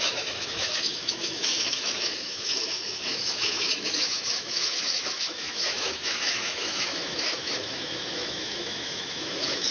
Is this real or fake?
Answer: fake